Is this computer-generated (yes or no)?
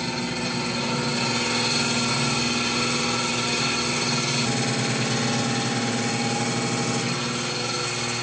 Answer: no